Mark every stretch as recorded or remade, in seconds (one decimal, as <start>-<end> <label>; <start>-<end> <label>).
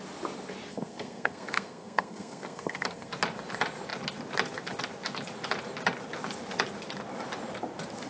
0.0-0.7 recorded; 0.7-3.1 remade; 3.1-8.1 recorded